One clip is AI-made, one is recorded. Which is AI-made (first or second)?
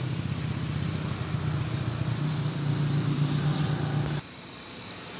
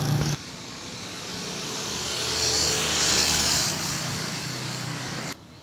second